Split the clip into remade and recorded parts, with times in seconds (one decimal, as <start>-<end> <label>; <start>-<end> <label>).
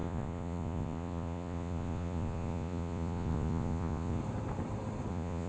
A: 0.0-4.2 remade; 4.2-5.1 recorded; 5.1-5.5 remade